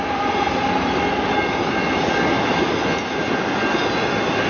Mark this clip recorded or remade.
recorded